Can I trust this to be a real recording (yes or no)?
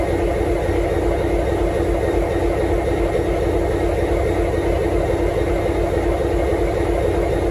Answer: yes